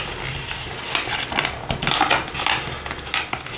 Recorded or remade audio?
recorded